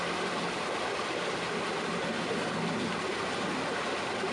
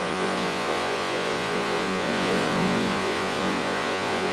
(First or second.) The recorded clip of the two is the first